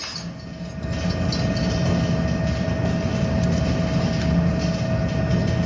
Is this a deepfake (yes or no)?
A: no